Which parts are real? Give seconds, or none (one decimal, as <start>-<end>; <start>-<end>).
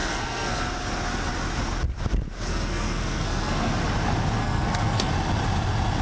0.6-2.5; 3.7-4.4; 5.1-6.0